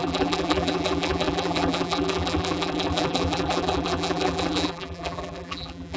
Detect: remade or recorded remade